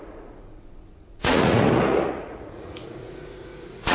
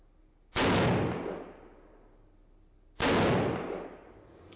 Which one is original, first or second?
second